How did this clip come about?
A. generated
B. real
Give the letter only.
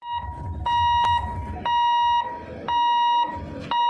B